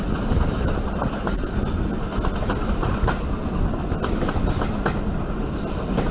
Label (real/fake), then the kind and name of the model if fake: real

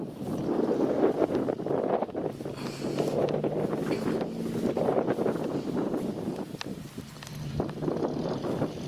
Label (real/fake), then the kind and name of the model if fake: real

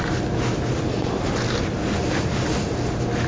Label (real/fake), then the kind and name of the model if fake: real